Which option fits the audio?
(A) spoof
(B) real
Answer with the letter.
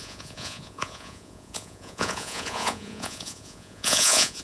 A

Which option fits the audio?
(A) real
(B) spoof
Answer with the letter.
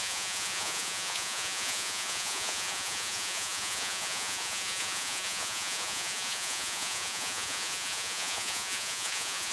B